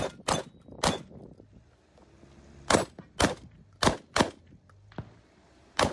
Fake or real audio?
real